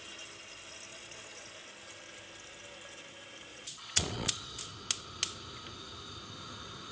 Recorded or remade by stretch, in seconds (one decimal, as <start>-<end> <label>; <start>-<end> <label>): 0.0-0.9 recorded; 0.9-1.5 remade; 1.5-3.5 recorded; 3.5-4.6 remade; 4.6-6.9 recorded